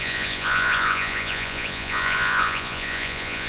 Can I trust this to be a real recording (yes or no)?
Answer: no